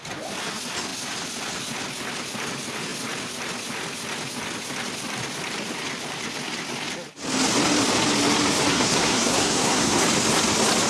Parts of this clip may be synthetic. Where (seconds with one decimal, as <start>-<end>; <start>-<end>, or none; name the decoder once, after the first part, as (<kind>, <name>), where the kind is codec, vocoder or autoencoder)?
8.7-10.0 (codec, SNAC)